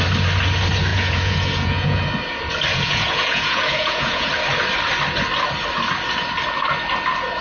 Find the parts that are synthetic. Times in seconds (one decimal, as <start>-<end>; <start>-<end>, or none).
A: 0.9-2.0; 2.7-4.3